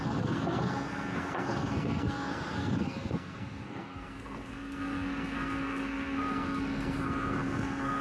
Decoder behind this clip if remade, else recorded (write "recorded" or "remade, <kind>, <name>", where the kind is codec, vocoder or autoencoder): remade, codec, SNAC